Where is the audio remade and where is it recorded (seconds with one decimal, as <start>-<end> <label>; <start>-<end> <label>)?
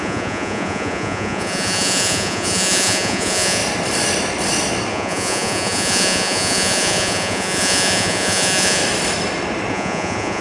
0.0-3.6 remade; 3.6-4.9 recorded; 4.9-8.8 remade; 8.8-9.7 recorded; 9.7-10.4 remade